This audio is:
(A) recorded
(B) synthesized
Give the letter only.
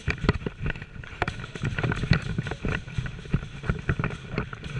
A